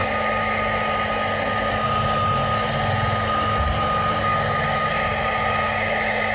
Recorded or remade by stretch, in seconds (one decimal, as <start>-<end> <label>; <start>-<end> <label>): 0.0-6.3 recorded